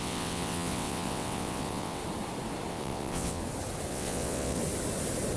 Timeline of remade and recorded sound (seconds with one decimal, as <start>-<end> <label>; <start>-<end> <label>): 0.0-2.0 remade; 2.0-2.7 recorded; 2.7-3.4 remade; 3.4-3.9 recorded; 3.9-4.6 remade; 4.6-5.4 recorded